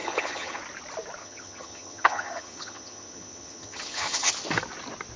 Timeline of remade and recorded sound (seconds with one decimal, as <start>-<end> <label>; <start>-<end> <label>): 0.0-0.6 remade; 0.6-1.2 recorded; 1.2-4.3 remade; 4.3-5.2 recorded